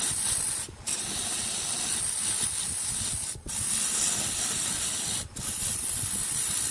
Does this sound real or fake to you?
real